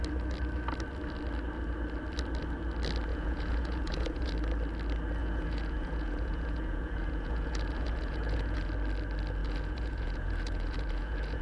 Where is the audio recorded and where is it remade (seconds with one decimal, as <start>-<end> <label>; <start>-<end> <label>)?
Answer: 0.0-3.1 recorded; 3.1-4.3 remade; 4.3-5.2 recorded; 5.2-8.7 remade; 8.7-9.4 recorded; 9.4-11.4 remade